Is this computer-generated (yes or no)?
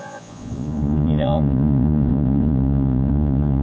yes